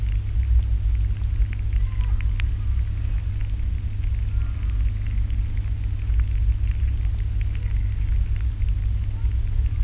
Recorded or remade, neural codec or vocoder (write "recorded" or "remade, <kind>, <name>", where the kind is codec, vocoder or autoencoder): recorded